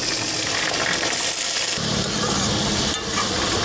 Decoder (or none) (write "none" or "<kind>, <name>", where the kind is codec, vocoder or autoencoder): none